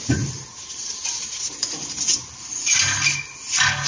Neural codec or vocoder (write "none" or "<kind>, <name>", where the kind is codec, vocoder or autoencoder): none